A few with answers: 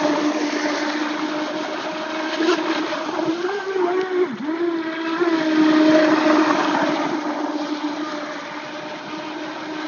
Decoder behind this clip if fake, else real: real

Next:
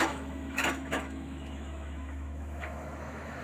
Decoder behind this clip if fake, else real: fake, autoencoder, DAC-VAE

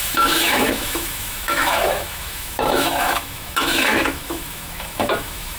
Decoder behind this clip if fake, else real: fake, autoencoder, DAC-VAE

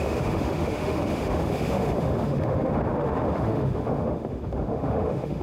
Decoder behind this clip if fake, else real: fake, autoencoder, DAC-VAE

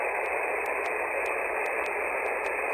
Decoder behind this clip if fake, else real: real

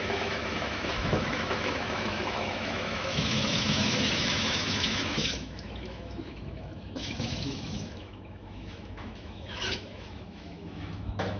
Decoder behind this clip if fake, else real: fake, autoencoder, DAC-VAE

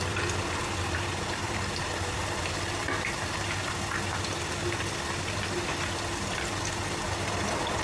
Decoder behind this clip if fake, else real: real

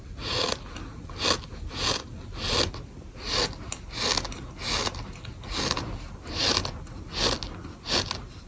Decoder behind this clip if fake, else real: real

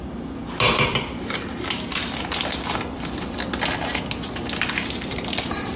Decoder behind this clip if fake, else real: real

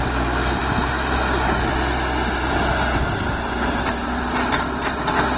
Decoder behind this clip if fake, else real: real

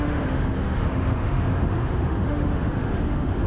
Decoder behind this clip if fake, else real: fake, autoencoder, DAC-VAE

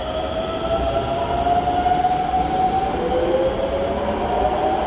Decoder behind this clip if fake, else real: real